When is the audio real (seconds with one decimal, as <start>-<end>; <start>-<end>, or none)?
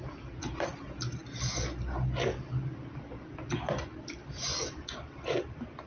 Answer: 0.0-5.9